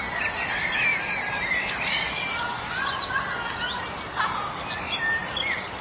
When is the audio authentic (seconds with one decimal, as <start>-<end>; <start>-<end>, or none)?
0.0-2.5; 3.2-5.8